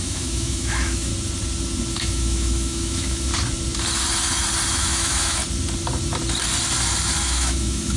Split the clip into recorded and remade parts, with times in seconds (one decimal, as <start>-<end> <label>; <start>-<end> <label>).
0.0-1.1 remade; 1.1-1.9 recorded; 1.9-3.3 remade; 3.3-4.7 recorded; 4.7-5.4 remade; 5.4-7.2 recorded; 7.2-8.0 remade